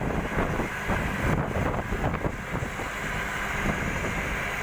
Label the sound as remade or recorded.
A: recorded